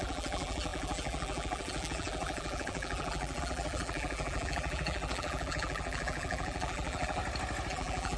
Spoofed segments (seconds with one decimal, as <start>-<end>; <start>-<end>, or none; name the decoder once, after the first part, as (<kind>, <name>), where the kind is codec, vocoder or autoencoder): 0.0-7.2 (vocoder, BigVGAN v2); 7.7-8.2